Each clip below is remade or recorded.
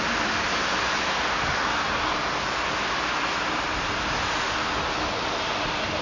recorded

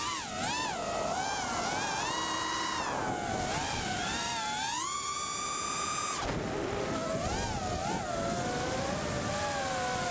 recorded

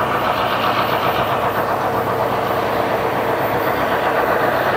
recorded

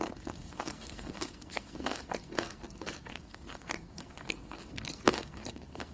remade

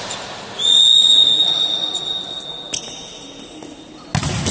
recorded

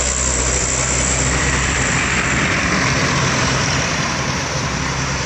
remade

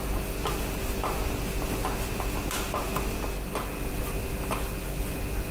recorded